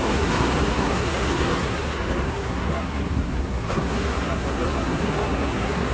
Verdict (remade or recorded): remade